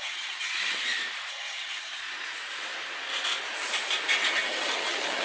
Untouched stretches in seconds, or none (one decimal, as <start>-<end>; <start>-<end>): 0.5-1.3; 2.0-4.3